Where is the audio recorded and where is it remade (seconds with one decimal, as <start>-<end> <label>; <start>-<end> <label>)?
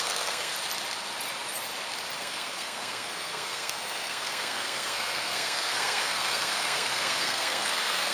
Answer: 0.0-0.5 remade; 0.5-2.2 recorded; 2.2-8.1 remade